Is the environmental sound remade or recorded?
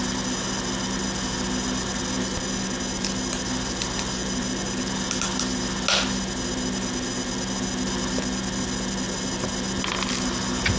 recorded